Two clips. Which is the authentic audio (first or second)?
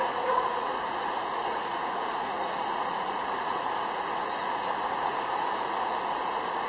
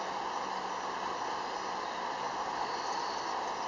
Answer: second